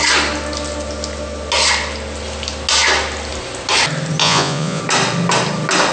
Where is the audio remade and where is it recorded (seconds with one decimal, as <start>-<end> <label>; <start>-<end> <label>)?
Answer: 0.0-4.2 recorded; 4.2-4.8 remade; 4.8-5.9 recorded